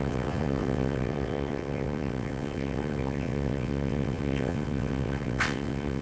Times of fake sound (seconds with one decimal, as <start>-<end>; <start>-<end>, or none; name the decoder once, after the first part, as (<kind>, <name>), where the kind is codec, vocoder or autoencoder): 0.0-6.0 (vocoder, WaveNeXt)